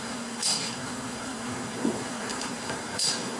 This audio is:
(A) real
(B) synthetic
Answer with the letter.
B